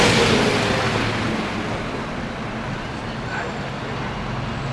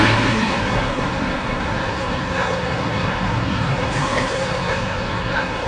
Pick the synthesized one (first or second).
second